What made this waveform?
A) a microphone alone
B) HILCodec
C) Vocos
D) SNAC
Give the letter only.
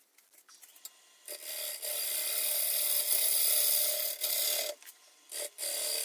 A